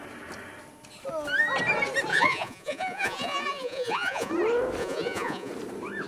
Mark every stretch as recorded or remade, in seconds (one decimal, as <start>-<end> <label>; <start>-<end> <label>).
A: 0.0-2.1 recorded; 2.1-4.3 remade; 4.3-4.8 recorded; 4.8-5.5 remade; 5.5-6.1 recorded